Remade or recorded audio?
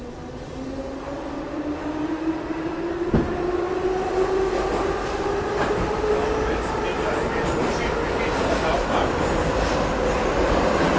recorded